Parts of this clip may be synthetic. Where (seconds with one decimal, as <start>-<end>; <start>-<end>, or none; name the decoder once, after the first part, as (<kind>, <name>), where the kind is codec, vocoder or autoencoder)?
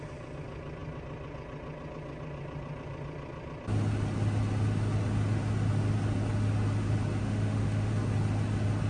7.2-7.9 (autoencoder, DAC-VAE)